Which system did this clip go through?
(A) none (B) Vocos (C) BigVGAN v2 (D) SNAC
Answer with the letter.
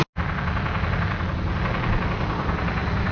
A